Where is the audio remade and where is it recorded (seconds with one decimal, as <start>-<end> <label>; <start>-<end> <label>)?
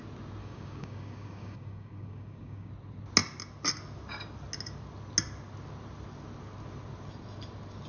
0.0-0.4 recorded; 0.4-2.7 remade; 2.7-7.9 recorded